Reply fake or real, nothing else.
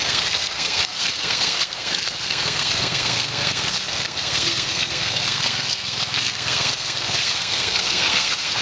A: fake